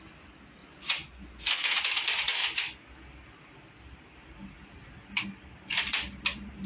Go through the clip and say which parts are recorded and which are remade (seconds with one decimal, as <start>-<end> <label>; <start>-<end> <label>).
0.0-0.6 recorded; 0.6-1.8 remade; 1.8-6.7 recorded